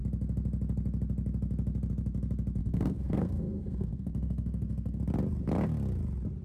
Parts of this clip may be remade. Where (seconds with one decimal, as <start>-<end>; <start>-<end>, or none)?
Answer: 2.6-5.0